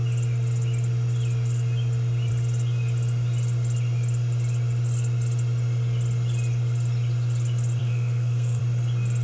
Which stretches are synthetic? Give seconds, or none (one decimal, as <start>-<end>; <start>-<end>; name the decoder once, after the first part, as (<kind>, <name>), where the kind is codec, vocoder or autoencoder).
7.8-8.6 (codec, SNAC)